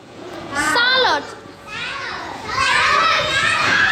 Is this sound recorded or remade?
remade